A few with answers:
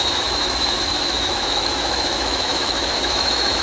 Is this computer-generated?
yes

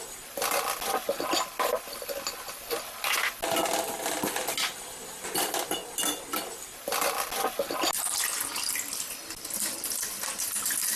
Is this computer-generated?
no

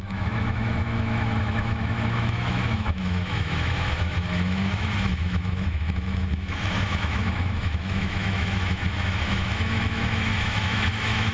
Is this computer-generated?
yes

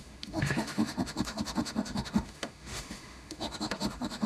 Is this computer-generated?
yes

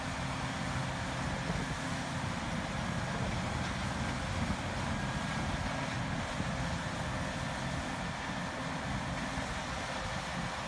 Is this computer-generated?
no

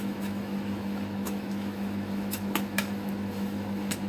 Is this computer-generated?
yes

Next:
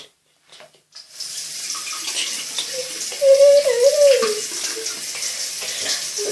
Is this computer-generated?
no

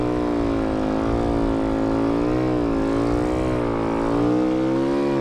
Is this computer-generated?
no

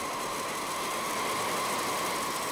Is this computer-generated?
no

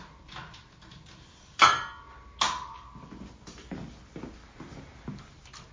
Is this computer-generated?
no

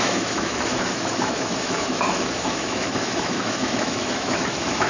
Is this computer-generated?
yes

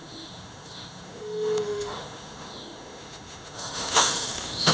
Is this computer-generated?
yes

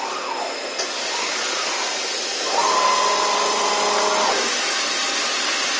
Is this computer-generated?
no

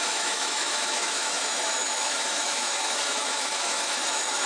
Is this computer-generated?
yes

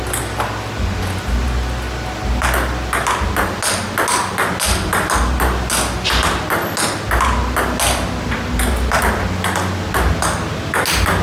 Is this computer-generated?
no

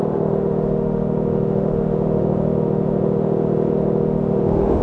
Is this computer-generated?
yes